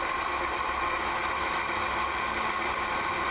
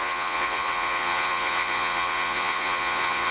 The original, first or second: first